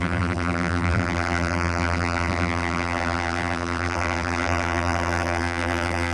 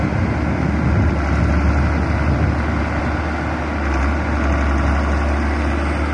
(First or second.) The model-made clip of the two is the first